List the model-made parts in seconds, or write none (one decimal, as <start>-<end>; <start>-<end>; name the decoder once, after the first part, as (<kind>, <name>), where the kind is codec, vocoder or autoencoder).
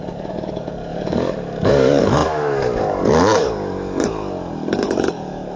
0.0-5.6 (codec, DAC)